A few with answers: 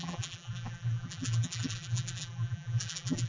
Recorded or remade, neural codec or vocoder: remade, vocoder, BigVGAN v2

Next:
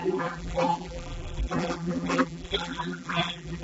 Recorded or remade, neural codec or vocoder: remade, vocoder, BigVGAN v2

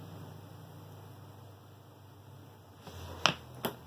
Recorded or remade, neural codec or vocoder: recorded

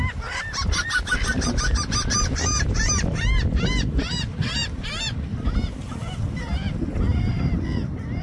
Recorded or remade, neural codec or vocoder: recorded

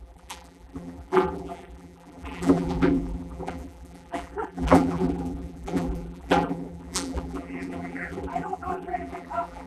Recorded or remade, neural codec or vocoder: remade, vocoder, BigVGAN v2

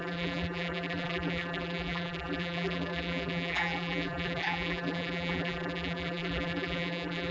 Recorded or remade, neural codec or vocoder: remade, vocoder, BigVGAN v2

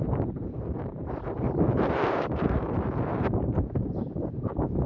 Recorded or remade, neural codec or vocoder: remade, vocoder, BigVGAN v2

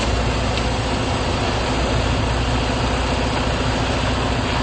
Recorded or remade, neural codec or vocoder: recorded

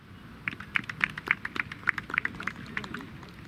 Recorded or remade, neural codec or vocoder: recorded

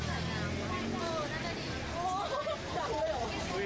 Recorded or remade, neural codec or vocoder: recorded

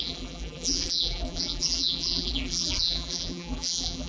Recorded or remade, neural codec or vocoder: remade, vocoder, BigVGAN v2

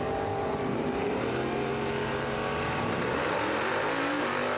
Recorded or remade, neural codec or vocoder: remade, vocoder, BigVGAN v2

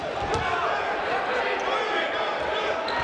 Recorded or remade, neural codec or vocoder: recorded